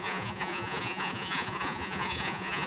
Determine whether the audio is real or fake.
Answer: fake